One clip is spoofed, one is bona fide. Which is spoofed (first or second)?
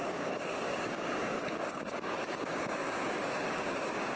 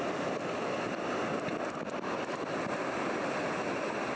first